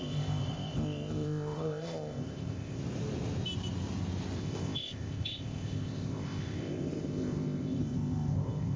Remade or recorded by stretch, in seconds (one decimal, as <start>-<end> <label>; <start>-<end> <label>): 0.0-2.8 remade; 2.8-4.4 recorded; 4.4-8.8 remade